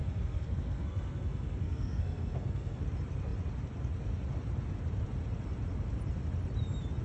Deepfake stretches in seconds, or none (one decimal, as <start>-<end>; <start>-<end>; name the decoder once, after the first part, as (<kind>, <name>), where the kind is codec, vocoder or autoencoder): 0.0-2.8 (codec, SNAC)